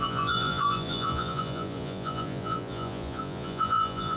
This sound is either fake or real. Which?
fake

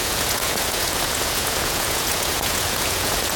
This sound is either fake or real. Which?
fake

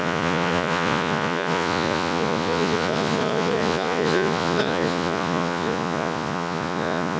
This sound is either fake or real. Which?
fake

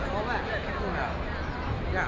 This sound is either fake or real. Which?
real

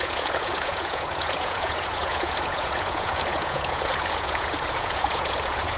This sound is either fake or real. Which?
fake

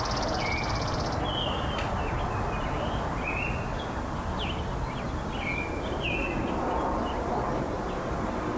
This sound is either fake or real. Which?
real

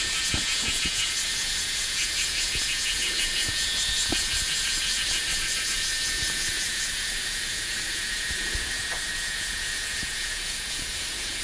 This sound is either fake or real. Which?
fake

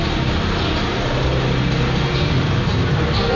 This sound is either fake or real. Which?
real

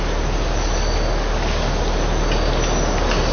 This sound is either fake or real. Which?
real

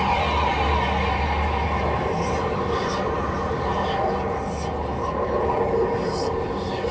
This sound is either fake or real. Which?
real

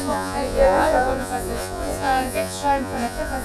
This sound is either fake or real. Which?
fake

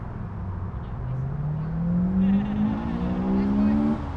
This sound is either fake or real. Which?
real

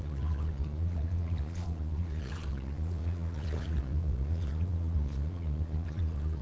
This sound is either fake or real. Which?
fake